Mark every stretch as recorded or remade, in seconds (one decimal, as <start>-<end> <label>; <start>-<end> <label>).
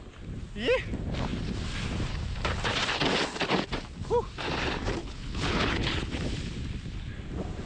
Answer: 0.0-5.0 recorded; 5.0-6.1 remade; 6.1-7.7 recorded